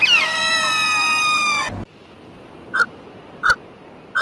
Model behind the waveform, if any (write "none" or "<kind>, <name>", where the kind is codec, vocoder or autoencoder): none